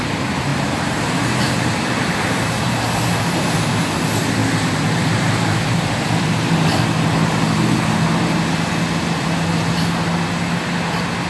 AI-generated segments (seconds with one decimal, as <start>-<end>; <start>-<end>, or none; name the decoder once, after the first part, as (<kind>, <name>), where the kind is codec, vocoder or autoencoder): 0.5-3.8 (vocoder, BigVGAN v2); 4.4-5.9